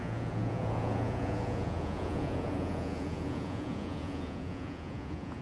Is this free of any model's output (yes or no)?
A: no